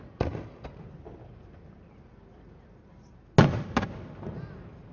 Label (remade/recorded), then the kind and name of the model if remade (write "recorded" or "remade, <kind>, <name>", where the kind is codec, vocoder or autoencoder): recorded